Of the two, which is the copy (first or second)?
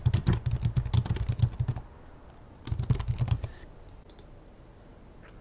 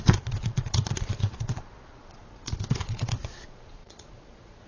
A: second